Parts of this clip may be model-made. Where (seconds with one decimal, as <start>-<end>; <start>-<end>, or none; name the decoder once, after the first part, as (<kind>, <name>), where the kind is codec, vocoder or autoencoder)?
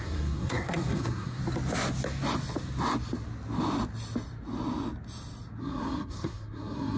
0.0-1.4 (codec, SNAC); 5.6-7.0